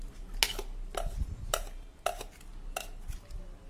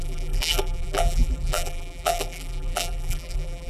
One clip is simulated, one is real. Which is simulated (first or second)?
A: second